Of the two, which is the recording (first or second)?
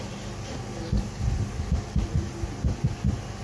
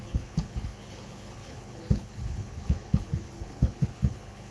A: first